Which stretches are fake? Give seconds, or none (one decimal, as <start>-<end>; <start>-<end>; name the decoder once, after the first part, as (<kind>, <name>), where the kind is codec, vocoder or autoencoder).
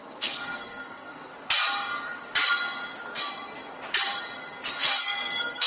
0.0-1.3 (codec, SNAC); 4.7-5.7